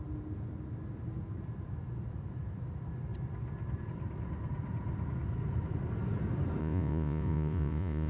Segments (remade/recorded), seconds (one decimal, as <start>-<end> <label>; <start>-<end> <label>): 0.0-6.6 recorded; 6.6-8.1 remade